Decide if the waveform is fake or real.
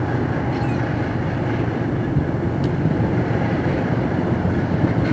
real